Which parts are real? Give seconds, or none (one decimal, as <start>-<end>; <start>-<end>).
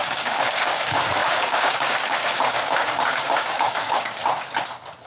4.2-5.1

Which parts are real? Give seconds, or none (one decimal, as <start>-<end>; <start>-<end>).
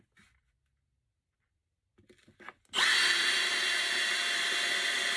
0.0-1.6; 4.7-5.2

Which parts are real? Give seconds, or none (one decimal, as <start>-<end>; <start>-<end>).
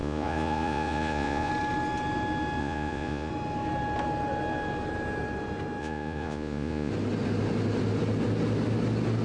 1.5-2.6; 3.3-5.8; 6.9-9.2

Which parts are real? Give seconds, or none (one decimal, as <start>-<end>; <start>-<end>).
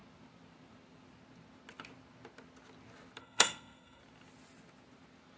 0.0-3.2; 4.0-5.4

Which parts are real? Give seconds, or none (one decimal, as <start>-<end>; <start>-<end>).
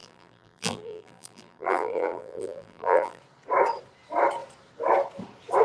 3.2-5.6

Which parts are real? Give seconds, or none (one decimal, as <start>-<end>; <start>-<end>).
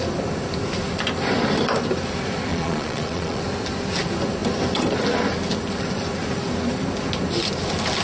0.0-2.5; 3.4-8.0